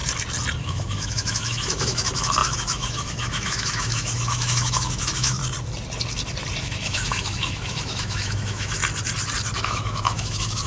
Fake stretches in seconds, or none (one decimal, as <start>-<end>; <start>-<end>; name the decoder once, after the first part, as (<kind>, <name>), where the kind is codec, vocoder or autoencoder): 0.6-5.4 (autoencoder, DAC-VAE); 6.6-8.8; 9.6-10.7